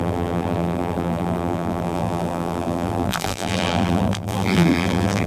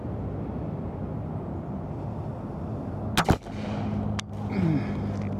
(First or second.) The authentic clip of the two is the second